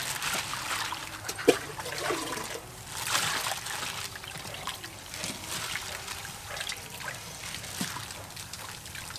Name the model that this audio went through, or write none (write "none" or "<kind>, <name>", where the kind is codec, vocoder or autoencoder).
none